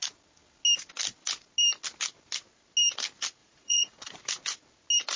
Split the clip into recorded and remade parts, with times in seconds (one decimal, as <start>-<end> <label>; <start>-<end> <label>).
0.0-3.4 recorded; 3.4-4.2 remade; 4.2-5.2 recorded